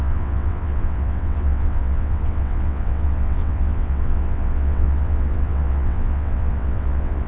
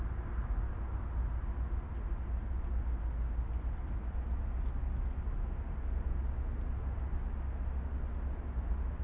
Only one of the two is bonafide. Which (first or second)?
second